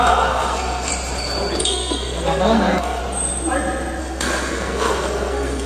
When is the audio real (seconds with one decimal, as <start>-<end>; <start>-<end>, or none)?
0.9-1.6; 3.0-4.0